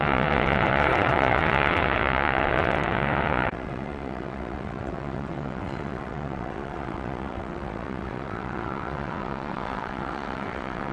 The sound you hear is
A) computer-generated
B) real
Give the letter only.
A